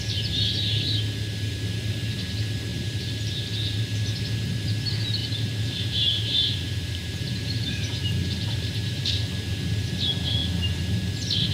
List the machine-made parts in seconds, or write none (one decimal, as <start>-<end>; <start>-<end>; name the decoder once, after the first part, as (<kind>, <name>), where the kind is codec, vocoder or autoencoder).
2.7-3.4 (vocoder, BigVGAN v2); 5.2-9.3